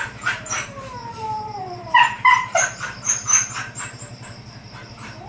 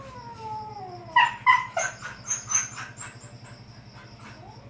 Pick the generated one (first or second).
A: first